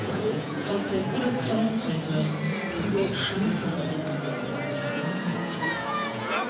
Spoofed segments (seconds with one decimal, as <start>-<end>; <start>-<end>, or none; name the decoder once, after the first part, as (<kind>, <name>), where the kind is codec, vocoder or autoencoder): 0.0-1.0 (vocoder, Vocos); 4.9-6.5